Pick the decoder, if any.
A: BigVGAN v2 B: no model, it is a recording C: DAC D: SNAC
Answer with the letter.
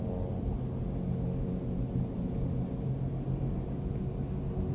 B